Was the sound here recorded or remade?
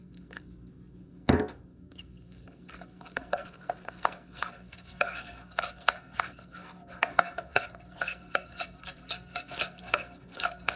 remade